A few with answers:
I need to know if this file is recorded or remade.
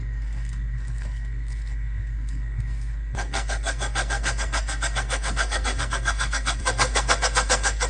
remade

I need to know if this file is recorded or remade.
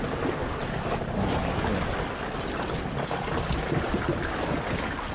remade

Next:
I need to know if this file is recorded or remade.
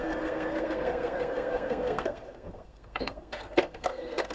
remade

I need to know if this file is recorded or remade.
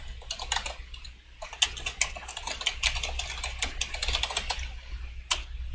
recorded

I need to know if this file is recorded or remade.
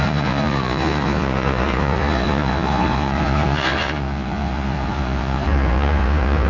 remade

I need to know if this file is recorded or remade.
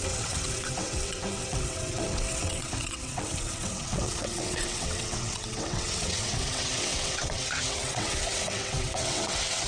remade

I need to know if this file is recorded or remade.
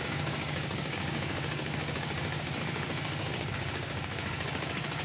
remade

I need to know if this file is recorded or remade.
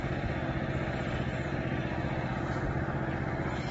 recorded